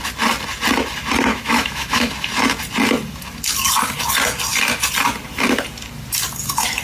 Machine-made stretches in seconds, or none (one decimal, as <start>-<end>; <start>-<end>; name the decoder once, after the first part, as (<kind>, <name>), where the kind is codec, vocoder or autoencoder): 1.3-2.1 (autoencoder, DAC-VAE)